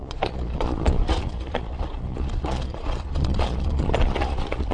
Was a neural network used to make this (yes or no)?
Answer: yes